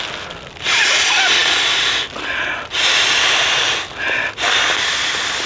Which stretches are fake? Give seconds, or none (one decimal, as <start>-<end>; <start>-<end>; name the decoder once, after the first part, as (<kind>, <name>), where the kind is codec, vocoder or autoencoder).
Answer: none